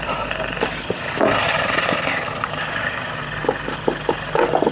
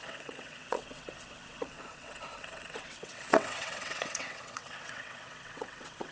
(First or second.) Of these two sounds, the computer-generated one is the second